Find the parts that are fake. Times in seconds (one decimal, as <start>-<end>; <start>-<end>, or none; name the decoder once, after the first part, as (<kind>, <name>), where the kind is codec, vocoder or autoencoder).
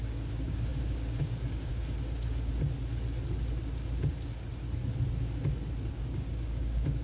0.0-1.7 (codec, DAC); 5.9-7.0